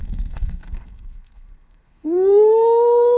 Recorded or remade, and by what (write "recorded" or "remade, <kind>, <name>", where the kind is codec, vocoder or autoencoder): remade, codec, SNAC